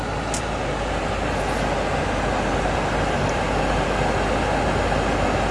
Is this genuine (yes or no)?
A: yes